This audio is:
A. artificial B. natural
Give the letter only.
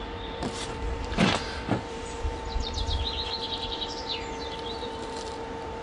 A